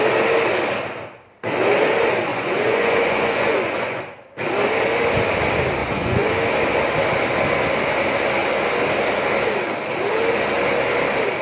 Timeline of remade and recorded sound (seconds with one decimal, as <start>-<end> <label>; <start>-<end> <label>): 0.0-2.3 recorded; 2.3-4.0 remade; 4.0-5.8 recorded; 5.8-6.3 remade; 6.3-11.4 recorded